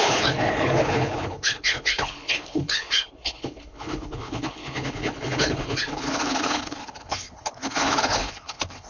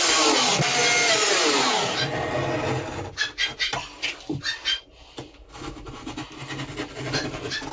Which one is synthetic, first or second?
first